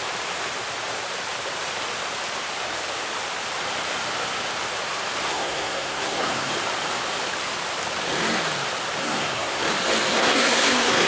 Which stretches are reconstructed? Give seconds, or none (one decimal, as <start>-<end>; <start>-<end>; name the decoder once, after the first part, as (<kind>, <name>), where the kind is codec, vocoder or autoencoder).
5.3-6.5 (codec, SNAC); 9.0-9.6; 10.1-11.1